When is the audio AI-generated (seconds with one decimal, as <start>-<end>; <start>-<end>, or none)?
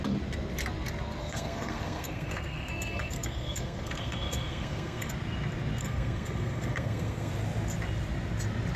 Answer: 1.2-5.1; 5.8-7.3